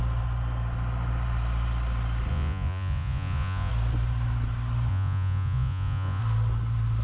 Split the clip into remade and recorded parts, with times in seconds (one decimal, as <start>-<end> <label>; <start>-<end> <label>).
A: 0.0-2.3 recorded; 2.3-3.7 remade; 3.7-4.9 recorded; 4.9-6.2 remade; 6.2-7.0 recorded